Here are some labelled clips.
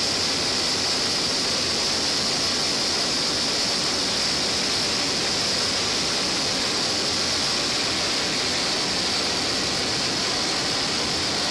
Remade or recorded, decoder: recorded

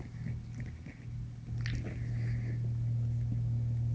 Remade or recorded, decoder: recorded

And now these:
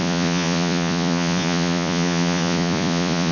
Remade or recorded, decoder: remade, vocoder, Vocos